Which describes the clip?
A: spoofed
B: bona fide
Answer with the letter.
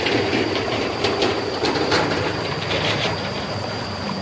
A